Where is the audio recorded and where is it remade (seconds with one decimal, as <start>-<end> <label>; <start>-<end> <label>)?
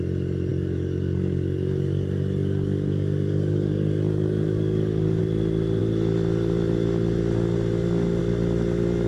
0.0-0.5 recorded; 0.5-5.2 remade; 5.2-9.1 recorded